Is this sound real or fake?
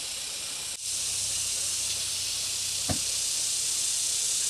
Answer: real